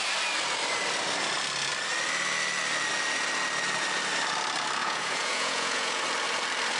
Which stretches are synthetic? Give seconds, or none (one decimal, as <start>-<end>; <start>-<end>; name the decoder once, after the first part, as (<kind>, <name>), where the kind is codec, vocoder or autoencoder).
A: 4.8-6.0 (vocoder, Vocos)